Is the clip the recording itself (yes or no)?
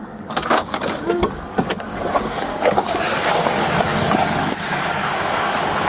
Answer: no